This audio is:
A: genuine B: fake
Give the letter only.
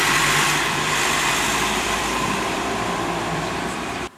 B